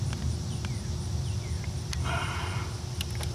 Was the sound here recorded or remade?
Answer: recorded